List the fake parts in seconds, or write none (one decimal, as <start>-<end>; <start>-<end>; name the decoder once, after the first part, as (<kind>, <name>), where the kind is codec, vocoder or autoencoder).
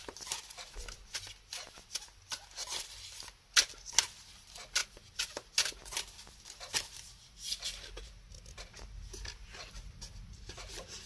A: none